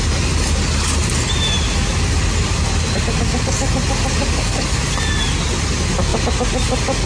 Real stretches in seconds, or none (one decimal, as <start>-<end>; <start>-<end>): 0.0-7.1